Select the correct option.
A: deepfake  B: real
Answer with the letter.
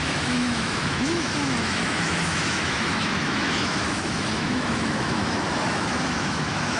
A